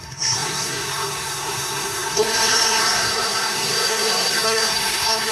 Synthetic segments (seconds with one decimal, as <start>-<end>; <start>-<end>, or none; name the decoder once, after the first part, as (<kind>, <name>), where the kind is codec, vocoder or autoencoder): 0.0-5.3 (codec, SNAC)